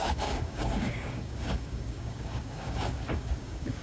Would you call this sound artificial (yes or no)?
yes